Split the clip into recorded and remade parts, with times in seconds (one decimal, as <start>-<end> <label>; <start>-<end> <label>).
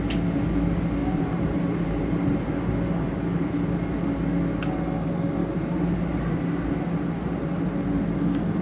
0.0-1.0 recorded; 1.0-2.5 remade; 2.5-5.4 recorded; 5.4-7.4 remade; 7.4-8.6 recorded